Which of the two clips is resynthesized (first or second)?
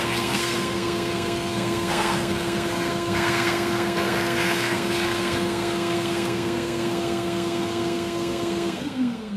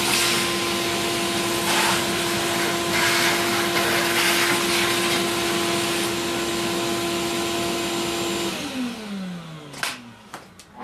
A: first